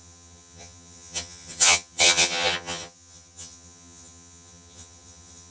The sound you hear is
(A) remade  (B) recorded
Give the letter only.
A